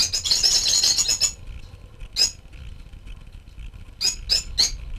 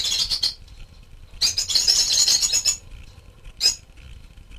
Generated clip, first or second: second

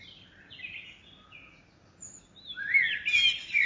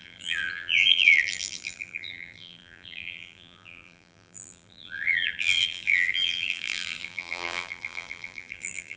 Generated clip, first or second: second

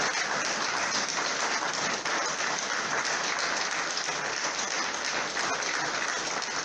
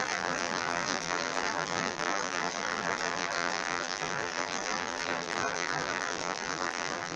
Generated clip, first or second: second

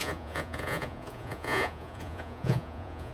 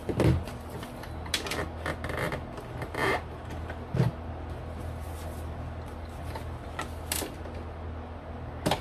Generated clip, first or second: first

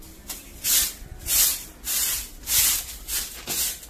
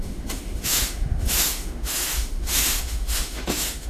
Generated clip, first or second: second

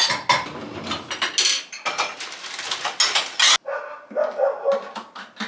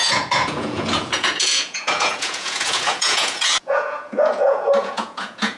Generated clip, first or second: second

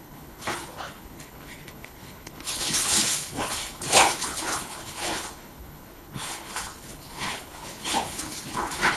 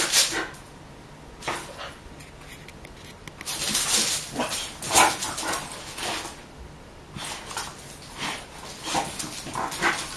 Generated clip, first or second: first